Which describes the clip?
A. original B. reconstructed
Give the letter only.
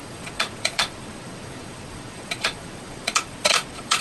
B